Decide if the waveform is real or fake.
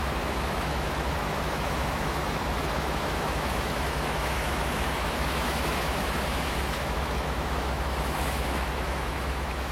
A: fake